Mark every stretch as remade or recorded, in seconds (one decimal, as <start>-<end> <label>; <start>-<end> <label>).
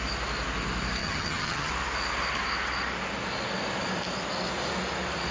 0.0-1.0 recorded; 1.0-1.7 remade; 1.7-5.3 recorded